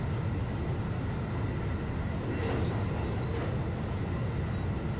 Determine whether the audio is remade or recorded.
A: recorded